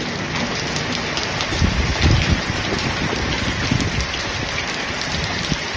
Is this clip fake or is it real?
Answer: real